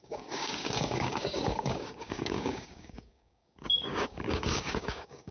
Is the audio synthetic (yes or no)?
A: yes